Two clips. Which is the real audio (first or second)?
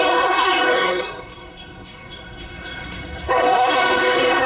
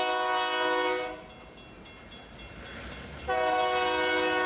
second